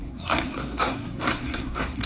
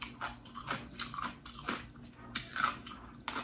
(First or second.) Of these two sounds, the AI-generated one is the first